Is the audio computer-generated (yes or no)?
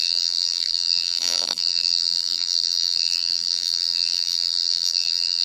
yes